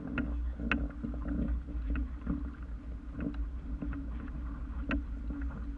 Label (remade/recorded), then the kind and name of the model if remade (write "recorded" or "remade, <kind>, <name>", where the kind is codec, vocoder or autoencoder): recorded